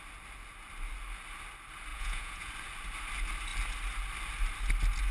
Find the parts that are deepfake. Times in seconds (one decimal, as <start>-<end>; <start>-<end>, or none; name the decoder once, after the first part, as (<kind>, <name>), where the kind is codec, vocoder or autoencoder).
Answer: 1.9-2.5 (vocoder, Vocos)

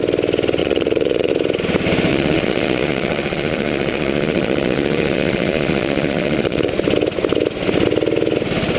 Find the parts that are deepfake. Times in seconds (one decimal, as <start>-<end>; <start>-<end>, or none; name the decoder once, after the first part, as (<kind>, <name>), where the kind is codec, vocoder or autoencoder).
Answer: 0.6-1.3 (vocoder, Vocos); 2.1-6.7

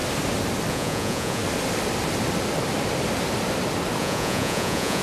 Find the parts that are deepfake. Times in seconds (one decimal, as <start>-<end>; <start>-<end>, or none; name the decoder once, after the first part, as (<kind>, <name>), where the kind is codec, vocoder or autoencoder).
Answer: 0.7-1.4 (vocoder, Vocos); 4.0-5.0

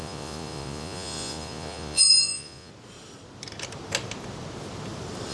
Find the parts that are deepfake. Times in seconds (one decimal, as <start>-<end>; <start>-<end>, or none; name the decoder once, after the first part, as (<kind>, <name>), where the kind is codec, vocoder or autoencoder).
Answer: 0.0-2.7 (vocoder, Vocos)

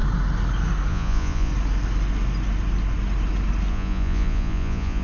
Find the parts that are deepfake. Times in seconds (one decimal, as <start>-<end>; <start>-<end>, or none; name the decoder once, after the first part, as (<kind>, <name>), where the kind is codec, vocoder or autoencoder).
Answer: 0.9-1.5 (vocoder, Vocos); 3.7-5.0